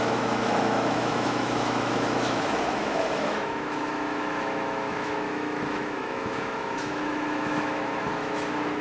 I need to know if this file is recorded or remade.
remade